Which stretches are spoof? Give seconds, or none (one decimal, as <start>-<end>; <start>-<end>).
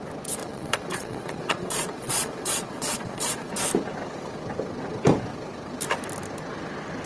0.4-3.5